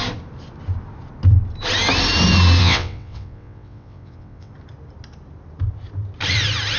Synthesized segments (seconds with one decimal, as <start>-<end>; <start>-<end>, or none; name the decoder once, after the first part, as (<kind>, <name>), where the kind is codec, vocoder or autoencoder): 2.6-4.5 (vocoder, WaveNeXt)